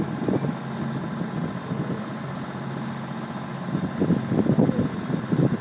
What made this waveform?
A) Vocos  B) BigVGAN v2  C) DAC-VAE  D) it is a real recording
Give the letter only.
D